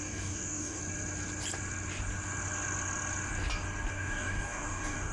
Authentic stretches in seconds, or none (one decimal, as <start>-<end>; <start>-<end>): 0.8-3.9